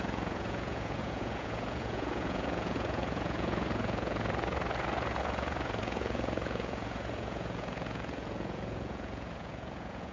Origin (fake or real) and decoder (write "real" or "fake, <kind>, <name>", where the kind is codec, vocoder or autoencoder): fake, vocoder, Vocos